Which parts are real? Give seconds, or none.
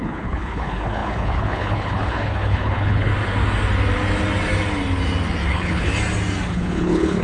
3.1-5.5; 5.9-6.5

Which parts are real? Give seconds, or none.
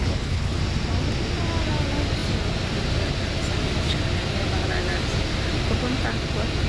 0.6-6.7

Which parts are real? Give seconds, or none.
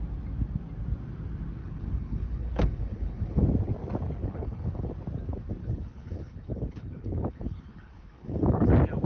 0.0-1.6; 3.4-4.2; 4.9-5.6; 8.7-9.1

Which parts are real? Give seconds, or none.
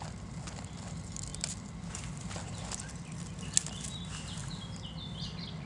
0.0-5.7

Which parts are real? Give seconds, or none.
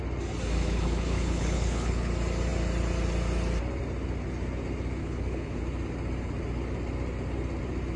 0.0-0.6; 2.1-5.0; 5.6-8.0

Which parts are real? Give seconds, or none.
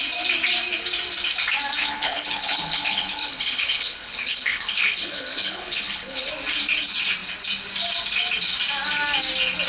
0.0-1.8; 6.3-9.7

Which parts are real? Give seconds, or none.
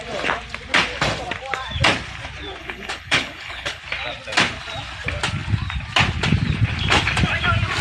0.0-2.6; 3.8-7.8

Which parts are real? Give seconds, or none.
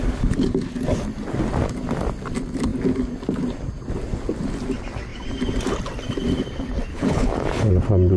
0.0-6.9; 7.7-8.2